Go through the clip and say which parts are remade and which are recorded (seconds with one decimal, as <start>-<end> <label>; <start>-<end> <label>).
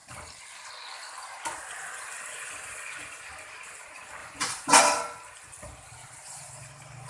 0.0-4.2 recorded; 4.2-4.8 remade; 4.8-7.1 recorded